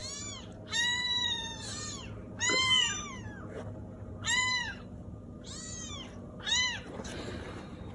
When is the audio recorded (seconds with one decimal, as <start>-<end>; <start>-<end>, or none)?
none